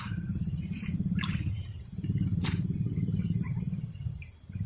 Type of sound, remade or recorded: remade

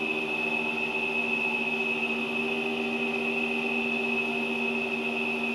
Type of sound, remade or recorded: recorded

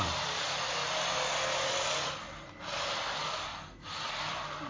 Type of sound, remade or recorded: remade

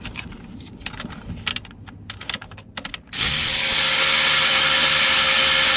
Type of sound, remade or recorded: recorded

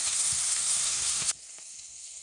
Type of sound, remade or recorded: remade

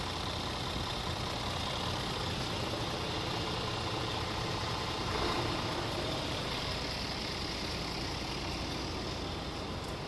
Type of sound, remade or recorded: recorded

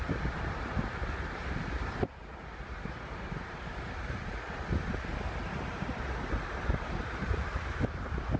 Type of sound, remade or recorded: remade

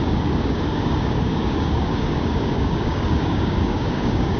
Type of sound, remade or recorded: remade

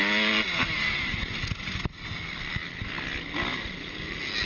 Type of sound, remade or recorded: recorded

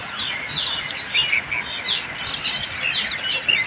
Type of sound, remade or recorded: recorded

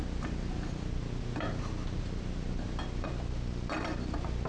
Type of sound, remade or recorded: recorded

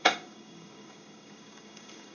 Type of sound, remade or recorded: remade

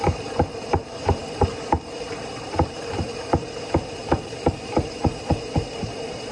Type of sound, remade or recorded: remade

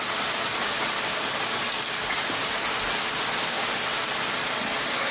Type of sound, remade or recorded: recorded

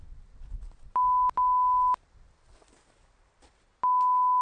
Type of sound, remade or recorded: recorded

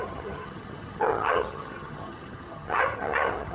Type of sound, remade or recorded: remade